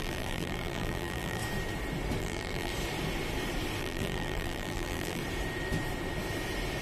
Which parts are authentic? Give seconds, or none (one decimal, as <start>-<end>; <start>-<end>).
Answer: 1.4-2.2; 2.7-3.8; 5.2-6.8